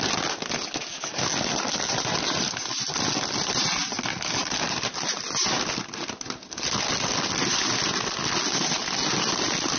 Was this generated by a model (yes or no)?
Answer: no